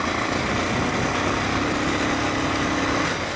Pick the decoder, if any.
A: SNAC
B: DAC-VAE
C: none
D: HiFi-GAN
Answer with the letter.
C